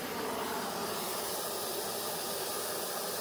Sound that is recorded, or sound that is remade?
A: recorded